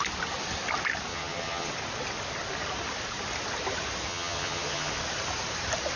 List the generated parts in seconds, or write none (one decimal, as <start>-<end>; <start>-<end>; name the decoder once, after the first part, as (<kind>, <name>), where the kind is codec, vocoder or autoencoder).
1.1-1.7 (vocoder, HiFi-GAN); 4.1-4.9